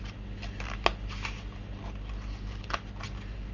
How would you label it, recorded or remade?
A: recorded